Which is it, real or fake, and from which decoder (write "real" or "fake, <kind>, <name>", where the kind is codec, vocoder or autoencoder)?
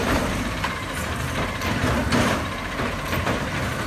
fake, vocoder, BigVGAN v2